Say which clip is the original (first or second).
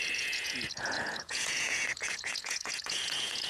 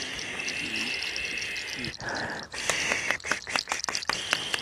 second